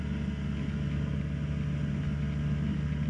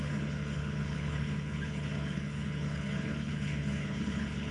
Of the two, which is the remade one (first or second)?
second